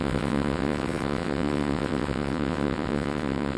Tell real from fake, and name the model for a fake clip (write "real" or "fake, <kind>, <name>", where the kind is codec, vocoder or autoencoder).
fake, vocoder, WaveNeXt